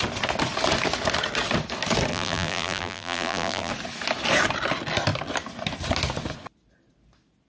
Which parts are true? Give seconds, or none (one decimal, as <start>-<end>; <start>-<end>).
0.0-2.1; 3.7-7.5